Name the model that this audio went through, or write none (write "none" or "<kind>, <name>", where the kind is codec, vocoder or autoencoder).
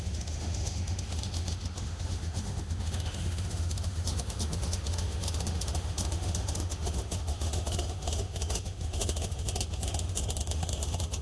autoencoder, DAC-VAE